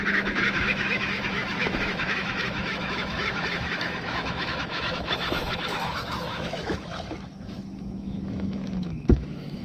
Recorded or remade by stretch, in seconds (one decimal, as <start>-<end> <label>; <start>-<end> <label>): 0.0-9.6 remade